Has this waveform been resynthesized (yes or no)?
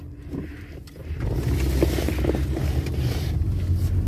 no